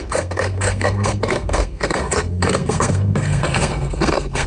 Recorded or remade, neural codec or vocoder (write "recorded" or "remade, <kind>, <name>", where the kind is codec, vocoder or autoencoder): remade, codec, SNAC